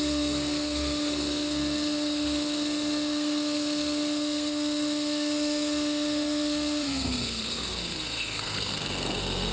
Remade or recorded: remade